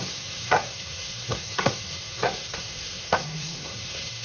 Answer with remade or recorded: remade